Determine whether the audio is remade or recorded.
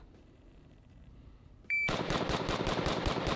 remade